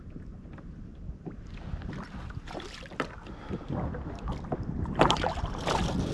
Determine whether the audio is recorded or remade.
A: remade